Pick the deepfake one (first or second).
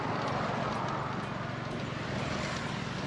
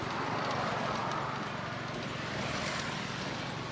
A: second